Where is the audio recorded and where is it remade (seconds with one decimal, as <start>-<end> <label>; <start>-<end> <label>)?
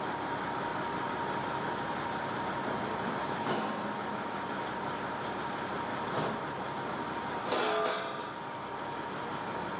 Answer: 0.0-9.8 recorded